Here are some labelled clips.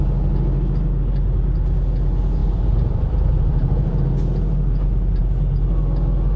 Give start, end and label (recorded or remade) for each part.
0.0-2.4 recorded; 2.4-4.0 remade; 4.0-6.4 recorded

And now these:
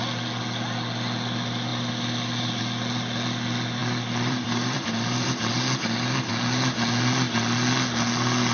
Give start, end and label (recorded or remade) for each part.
0.0-1.7 recorded; 1.7-2.6 remade; 2.6-3.8 recorded; 3.8-6.3 remade; 6.3-8.5 recorded

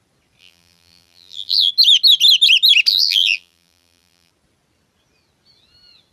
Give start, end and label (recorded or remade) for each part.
0.0-0.4 recorded; 0.4-1.7 remade; 1.7-2.9 recorded; 2.9-4.3 remade; 4.3-6.1 recorded

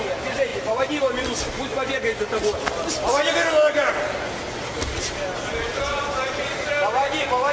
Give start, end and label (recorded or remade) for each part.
0.0-0.5 recorded; 0.5-1.5 remade; 1.5-5.9 recorded; 5.9-6.7 remade; 6.7-7.5 recorded

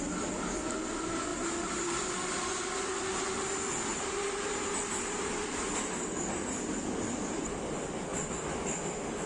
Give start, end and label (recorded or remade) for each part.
0.0-1.3 recorded; 1.3-2.1 remade; 2.1-9.3 recorded

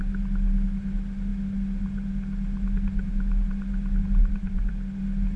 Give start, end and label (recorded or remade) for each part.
0.0-4.2 recorded; 4.2-5.0 remade; 5.0-5.4 recorded

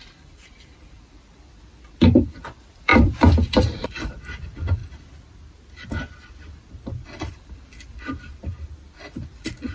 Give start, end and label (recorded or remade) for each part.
0.0-4.8 remade; 4.8-7.3 recorded; 7.3-8.5 remade; 8.5-9.7 recorded